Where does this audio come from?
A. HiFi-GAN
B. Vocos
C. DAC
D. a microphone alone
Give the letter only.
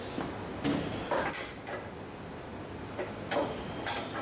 D